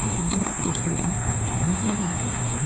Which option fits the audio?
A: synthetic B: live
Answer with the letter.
A